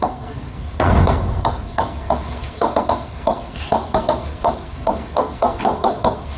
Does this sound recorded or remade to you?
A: remade